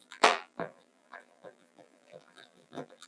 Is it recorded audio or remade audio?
remade